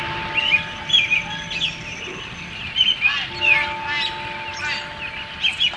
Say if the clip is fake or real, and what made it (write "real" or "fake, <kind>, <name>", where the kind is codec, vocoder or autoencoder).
real